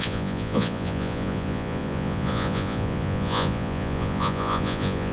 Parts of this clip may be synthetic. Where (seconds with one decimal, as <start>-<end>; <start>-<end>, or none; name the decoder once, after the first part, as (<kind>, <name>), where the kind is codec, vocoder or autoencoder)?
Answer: 0.0-5.1 (vocoder, Vocos)